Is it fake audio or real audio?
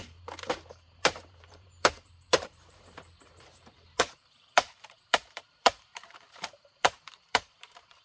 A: fake